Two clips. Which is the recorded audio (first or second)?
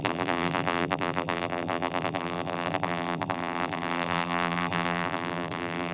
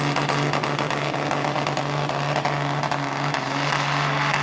second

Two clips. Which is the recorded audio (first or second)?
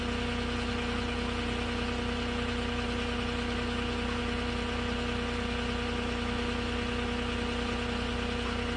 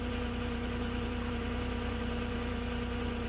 first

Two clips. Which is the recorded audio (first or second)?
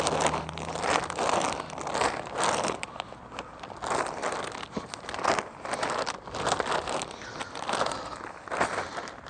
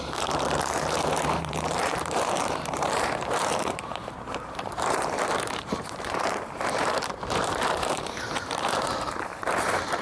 first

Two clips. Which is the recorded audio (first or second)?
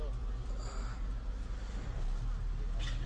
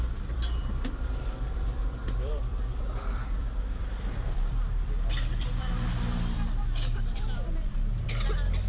first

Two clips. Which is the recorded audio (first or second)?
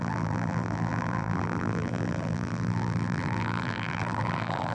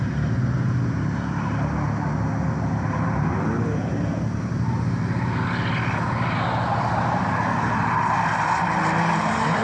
second